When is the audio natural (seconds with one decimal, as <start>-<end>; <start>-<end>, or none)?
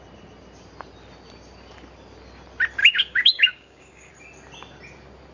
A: 0.0-2.8; 4.1-5.3